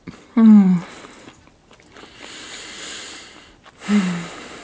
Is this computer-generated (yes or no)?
no